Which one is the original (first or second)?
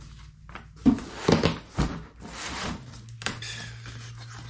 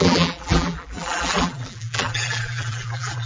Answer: first